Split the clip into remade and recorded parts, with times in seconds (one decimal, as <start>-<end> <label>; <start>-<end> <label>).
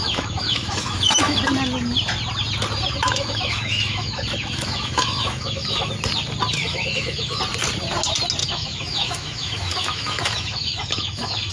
0.0-1.4 remade; 1.4-3.0 recorded; 3.0-5.9 remade; 5.9-6.6 recorded; 6.6-7.4 remade; 7.4-8.4 recorded; 8.4-11.5 remade